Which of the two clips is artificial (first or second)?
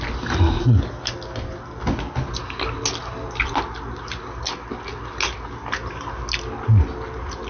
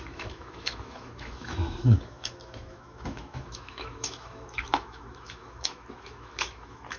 second